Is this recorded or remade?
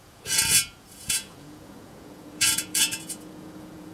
remade